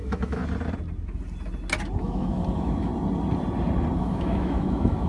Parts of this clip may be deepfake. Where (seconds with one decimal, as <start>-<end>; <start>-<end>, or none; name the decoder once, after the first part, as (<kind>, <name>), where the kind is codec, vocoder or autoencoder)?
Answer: 0.0-0.4 (autoencoder, DAC-VAE); 2.0-2.9; 4.0-5.1